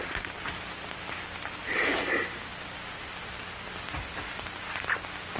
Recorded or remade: recorded